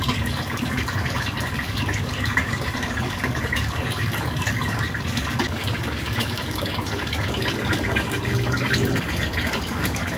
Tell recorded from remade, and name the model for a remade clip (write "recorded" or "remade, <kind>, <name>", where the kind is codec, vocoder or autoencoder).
remade, codec, DAC